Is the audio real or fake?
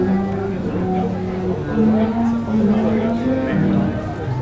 real